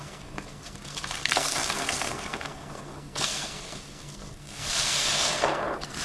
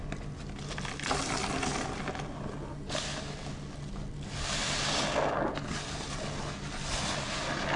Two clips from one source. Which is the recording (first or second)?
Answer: second